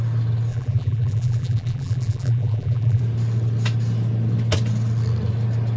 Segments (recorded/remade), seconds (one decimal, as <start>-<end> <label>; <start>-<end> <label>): 0.0-0.5 recorded; 0.5-3.0 remade; 3.0-5.8 recorded